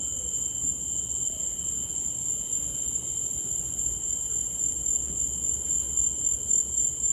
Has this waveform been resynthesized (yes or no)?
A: no